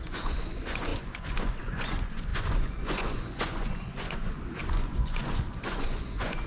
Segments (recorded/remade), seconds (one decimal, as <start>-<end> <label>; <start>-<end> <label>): 0.0-6.5 remade